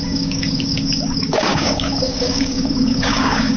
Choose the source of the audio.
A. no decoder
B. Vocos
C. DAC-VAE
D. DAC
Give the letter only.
D